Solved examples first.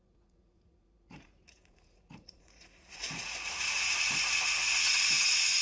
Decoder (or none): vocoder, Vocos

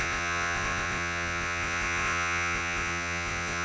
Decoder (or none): vocoder, Vocos